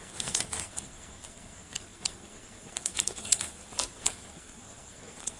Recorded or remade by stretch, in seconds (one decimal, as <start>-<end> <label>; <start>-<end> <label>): 0.0-5.4 remade